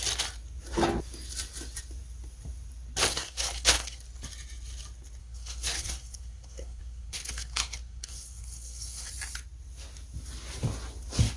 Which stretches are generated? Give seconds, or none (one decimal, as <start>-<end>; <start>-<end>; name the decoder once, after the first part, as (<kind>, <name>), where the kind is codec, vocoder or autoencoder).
3.1-4.0 (codec, SNAC); 5.2-9.1